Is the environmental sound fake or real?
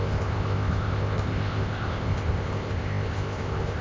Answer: fake